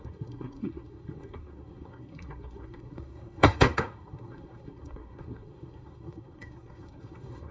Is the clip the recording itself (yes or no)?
no